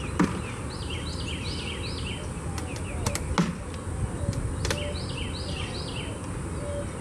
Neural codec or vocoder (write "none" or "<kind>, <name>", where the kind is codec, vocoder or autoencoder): none